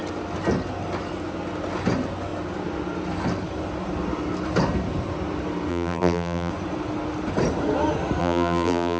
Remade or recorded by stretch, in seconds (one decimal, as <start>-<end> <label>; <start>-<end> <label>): 0.0-5.7 recorded; 5.7-6.5 remade; 6.5-8.2 recorded; 8.2-9.0 remade